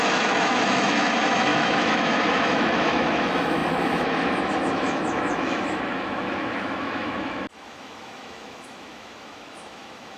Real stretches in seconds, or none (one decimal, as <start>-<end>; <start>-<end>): none